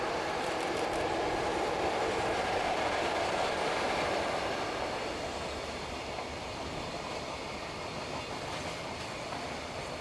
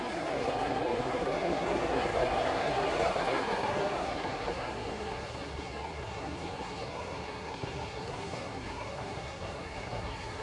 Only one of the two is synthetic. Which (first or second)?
second